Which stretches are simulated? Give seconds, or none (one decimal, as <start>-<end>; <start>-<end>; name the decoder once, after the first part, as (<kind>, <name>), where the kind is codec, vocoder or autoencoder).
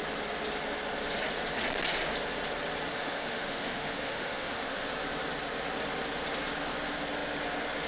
2.9-4.9 (autoencoder, DAC-VAE)